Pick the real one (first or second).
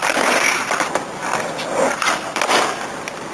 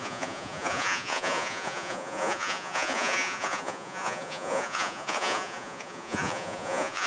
first